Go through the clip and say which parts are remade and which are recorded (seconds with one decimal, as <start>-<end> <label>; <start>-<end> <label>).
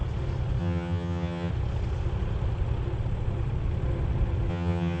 0.0-0.6 recorded; 0.6-1.5 remade; 1.5-4.5 recorded; 4.5-5.0 remade